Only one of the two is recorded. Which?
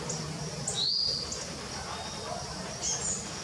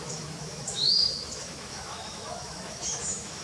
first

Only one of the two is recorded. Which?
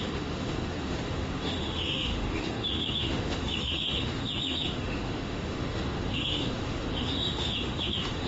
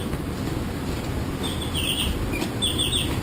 second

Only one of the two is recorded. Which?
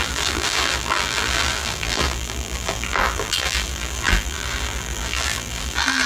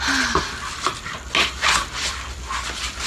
second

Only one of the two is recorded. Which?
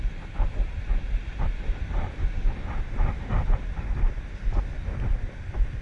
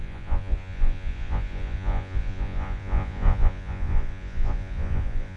first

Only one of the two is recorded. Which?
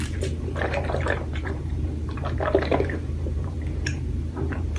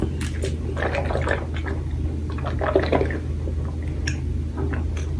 second